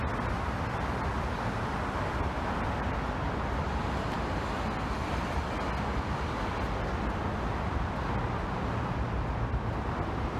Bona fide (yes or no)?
yes